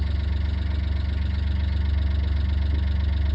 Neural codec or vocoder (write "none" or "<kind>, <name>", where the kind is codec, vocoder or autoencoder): none